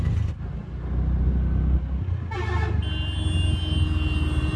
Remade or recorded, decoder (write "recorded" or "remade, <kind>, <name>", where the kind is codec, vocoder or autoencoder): recorded